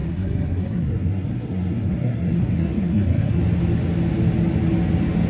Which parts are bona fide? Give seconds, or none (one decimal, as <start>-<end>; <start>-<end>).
3.4-5.3